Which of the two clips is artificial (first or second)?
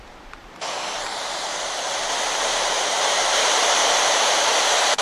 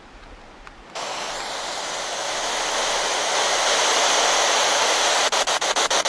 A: first